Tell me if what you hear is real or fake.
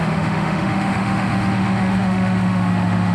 fake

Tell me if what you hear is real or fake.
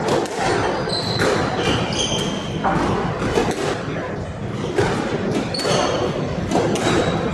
real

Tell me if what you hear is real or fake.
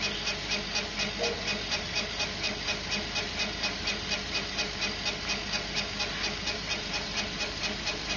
real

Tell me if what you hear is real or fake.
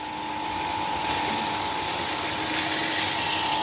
real